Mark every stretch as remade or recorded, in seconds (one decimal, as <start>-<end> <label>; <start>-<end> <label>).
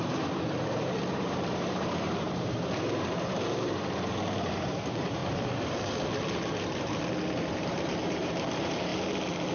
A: 0.0-5.2 remade; 5.2-7.5 recorded; 7.5-8.9 remade; 8.9-9.5 recorded